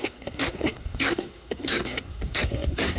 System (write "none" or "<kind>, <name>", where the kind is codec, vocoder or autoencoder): codec, SNAC